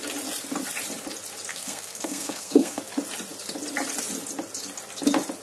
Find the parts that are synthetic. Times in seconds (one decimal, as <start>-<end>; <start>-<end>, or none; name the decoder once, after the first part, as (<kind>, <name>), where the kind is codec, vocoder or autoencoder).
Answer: 1.5-2.8 (codec, SNAC)